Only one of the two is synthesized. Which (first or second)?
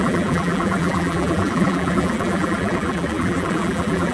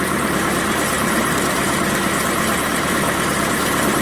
first